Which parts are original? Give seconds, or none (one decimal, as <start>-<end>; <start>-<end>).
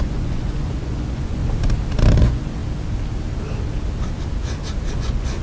1.4-2.2; 2.6-4.9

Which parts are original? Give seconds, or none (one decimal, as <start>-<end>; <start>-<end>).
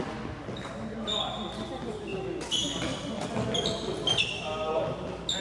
0.0-5.4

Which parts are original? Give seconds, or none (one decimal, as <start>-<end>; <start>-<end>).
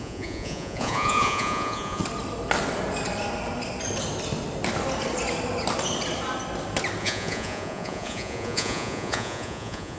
2.0-7.0